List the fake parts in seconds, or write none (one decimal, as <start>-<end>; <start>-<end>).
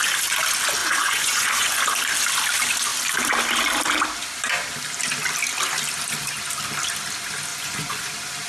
0.8-1.8; 7.5-8.1